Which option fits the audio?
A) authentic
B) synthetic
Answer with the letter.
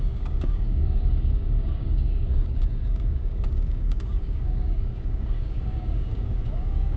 B